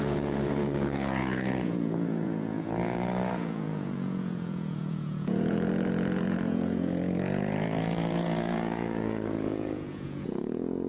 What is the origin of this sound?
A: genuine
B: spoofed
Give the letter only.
B